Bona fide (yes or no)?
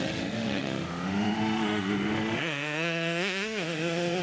no